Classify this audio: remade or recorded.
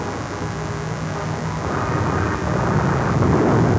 recorded